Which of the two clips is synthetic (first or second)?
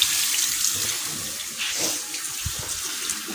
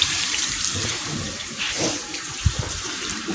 second